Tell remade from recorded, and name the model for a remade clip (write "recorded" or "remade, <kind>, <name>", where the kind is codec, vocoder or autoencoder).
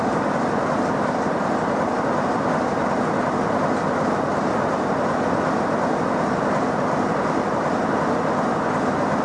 remade, vocoder, BigVGAN v2